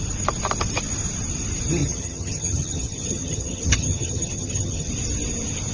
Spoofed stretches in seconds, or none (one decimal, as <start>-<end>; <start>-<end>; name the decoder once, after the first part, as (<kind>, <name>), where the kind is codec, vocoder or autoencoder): 1.8-4.9 (vocoder, HiFi-GAN)